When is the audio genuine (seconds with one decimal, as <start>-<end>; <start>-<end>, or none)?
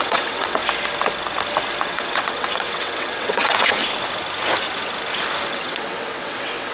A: 0.6-1.8; 3.8-5.5